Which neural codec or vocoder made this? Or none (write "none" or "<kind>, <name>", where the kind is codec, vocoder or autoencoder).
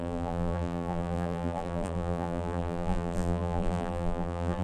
vocoder, BigVGAN v2